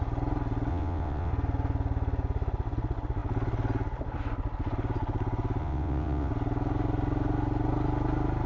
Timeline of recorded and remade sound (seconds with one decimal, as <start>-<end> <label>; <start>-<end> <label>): 0.0-0.7 recorded; 0.7-1.3 remade; 1.3-5.6 recorded; 5.6-6.3 remade; 6.3-8.5 recorded